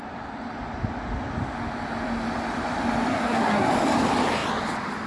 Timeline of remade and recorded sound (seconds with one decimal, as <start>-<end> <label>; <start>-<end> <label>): 0.0-3.1 recorded; 3.1-3.7 remade; 3.7-5.1 recorded